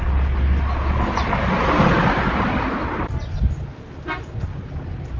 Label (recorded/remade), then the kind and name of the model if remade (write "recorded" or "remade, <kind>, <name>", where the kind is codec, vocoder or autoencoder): recorded